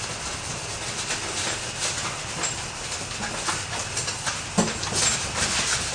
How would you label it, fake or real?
real